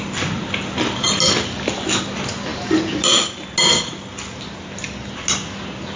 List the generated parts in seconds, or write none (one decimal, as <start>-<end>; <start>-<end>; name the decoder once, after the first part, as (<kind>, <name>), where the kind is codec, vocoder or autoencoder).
none